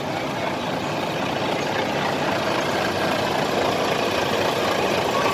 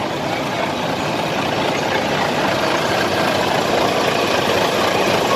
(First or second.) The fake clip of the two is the second